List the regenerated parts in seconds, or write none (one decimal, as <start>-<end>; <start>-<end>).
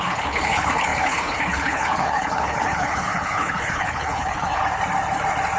0.0-4.6